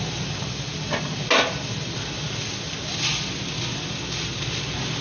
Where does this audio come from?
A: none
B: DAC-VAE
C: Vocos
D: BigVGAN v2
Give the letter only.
A